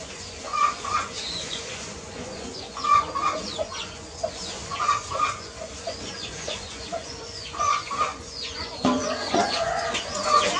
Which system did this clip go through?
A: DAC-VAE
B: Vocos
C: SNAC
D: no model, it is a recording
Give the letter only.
B